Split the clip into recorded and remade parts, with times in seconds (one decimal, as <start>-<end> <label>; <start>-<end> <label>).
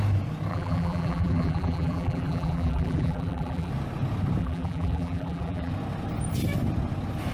0.0-0.5 recorded; 0.5-3.7 remade; 3.7-4.4 recorded; 4.4-5.7 remade; 5.7-7.3 recorded